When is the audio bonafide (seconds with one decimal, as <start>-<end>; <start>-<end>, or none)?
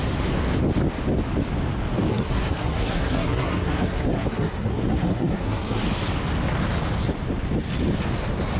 0.0-2.1; 5.8-8.6